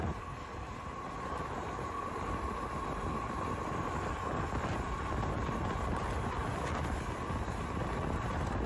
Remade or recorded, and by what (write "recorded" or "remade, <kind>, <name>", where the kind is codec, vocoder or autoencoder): recorded